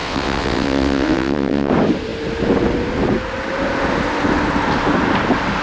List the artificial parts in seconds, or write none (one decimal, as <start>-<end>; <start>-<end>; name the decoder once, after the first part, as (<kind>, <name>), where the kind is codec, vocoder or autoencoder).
0.0-1.7 (vocoder, WaveNeXt)